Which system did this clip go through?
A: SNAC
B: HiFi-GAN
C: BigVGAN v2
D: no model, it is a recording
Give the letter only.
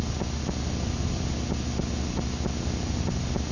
D